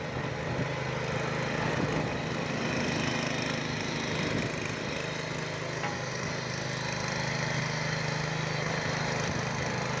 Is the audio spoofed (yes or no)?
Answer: no